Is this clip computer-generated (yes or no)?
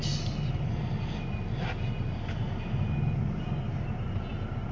no